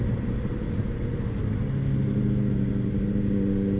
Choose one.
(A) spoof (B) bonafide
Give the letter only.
B